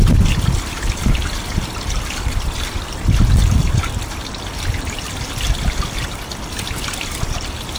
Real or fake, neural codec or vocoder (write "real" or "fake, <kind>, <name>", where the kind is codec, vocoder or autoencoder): fake, vocoder, BigVGAN v2